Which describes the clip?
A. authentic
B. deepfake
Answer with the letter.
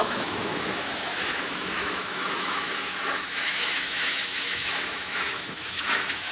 B